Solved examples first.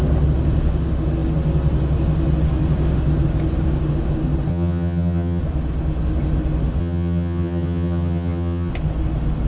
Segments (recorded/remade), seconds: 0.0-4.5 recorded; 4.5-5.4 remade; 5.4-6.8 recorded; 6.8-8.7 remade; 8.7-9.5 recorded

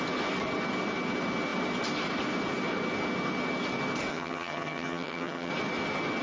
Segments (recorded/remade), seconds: 0.0-4.1 recorded; 4.1-5.5 remade; 5.5-6.2 recorded

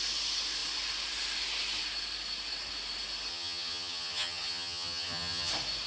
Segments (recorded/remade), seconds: 0.0-3.3 recorded; 3.3-5.5 remade; 5.5-5.9 recorded

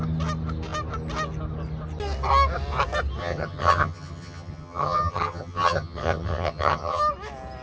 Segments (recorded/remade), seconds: 0.0-3.2 recorded; 3.2-7.0 remade; 7.0-7.6 recorded